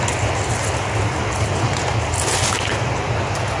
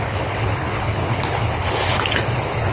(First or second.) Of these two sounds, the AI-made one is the second